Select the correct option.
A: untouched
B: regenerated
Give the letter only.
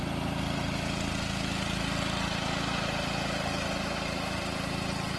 A